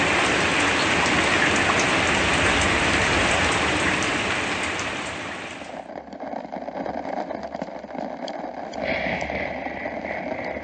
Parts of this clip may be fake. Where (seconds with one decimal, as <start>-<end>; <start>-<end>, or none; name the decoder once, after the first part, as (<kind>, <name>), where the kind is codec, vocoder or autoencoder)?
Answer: 0.0-0.5 (vocoder, BigVGAN v2); 2.3-10.6